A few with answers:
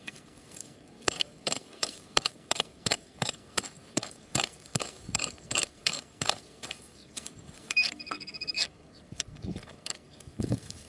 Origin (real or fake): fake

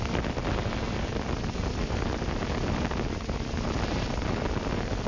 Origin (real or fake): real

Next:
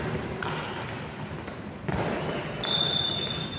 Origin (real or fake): real